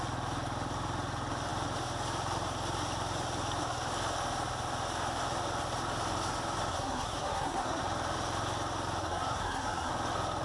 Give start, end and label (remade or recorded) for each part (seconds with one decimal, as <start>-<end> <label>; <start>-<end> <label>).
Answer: 0.0-6.7 recorded; 6.7-7.8 remade; 7.8-9.0 recorded; 9.0-9.9 remade; 9.9-10.4 recorded